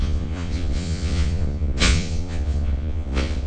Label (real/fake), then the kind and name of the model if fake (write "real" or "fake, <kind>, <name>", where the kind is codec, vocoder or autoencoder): fake, vocoder, Vocos